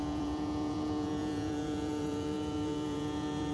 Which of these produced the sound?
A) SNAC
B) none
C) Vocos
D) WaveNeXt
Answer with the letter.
C